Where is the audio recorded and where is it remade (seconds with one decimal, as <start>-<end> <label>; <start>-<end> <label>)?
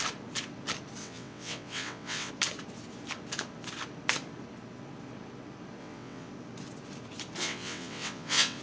0.0-1.0 recorded; 1.0-2.3 remade; 2.3-5.8 recorded; 5.8-6.3 remade; 6.3-7.4 recorded; 7.4-8.6 remade